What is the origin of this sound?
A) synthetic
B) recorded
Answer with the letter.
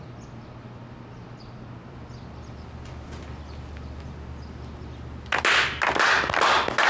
B